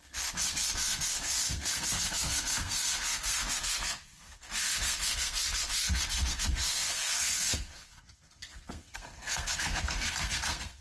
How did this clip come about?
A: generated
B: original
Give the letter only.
A